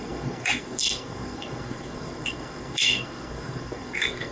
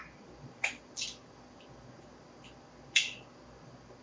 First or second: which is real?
second